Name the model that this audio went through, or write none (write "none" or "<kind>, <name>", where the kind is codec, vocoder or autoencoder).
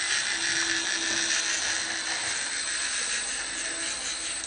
none